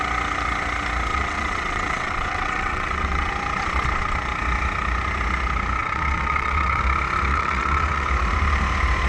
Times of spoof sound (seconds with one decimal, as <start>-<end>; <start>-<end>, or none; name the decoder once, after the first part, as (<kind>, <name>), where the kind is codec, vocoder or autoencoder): 1.1-3.3 (vocoder, WaveNeXt); 5.8-6.8; 7.3-8.1